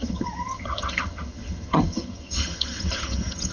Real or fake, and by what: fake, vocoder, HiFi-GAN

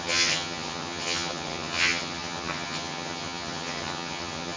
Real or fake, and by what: fake, vocoder, HiFi-GAN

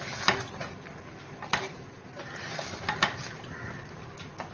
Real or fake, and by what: real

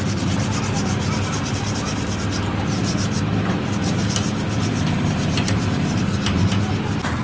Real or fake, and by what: real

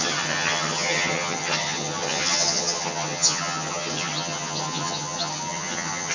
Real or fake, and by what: fake, vocoder, HiFi-GAN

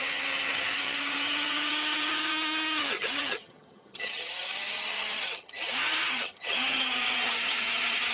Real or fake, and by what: fake, vocoder, HiFi-GAN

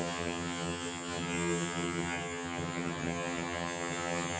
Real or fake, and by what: fake, vocoder, HiFi-GAN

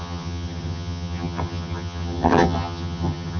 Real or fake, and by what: fake, vocoder, HiFi-GAN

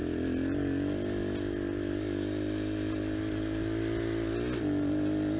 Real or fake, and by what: real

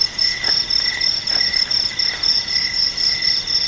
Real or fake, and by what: real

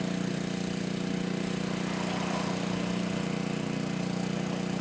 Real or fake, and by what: real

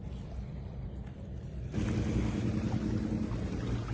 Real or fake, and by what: real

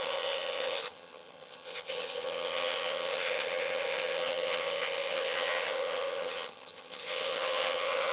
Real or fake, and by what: fake, vocoder, HiFi-GAN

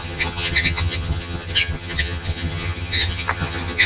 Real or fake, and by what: fake, vocoder, HiFi-GAN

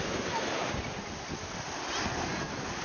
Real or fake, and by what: real